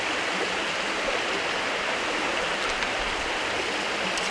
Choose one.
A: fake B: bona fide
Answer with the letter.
B